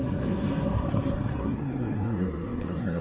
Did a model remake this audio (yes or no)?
yes